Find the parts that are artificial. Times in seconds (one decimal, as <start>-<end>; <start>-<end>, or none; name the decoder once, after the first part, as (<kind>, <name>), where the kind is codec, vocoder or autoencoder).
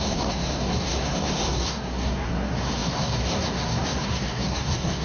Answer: 0.0-5.0 (codec, SNAC)